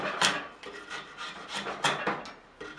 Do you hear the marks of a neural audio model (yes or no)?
no